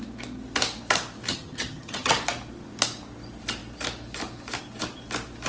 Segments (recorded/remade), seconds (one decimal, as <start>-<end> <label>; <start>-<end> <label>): 0.0-1.3 recorded; 1.3-2.1 remade; 2.1-5.5 recorded